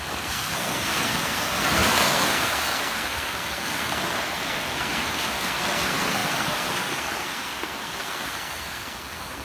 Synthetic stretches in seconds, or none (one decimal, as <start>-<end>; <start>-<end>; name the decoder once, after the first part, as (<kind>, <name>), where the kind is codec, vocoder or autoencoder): 0.0-9.4 (codec, SNAC)